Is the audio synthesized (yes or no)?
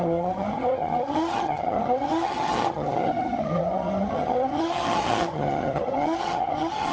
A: yes